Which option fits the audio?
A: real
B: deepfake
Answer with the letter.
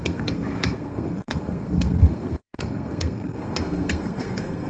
B